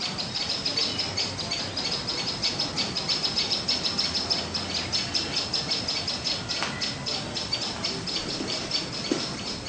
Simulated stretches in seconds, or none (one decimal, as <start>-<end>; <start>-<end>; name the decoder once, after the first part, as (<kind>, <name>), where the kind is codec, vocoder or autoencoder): none